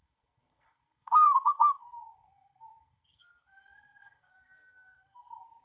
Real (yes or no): no